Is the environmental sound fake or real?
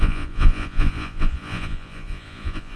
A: fake